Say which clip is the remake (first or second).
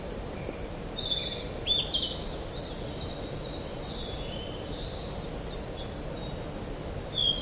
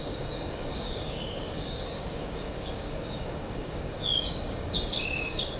second